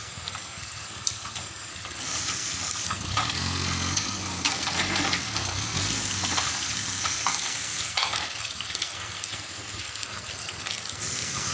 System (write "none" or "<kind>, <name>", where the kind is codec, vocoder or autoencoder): codec, SNAC